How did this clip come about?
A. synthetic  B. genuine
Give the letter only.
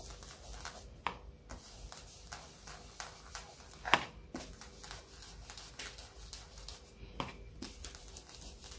B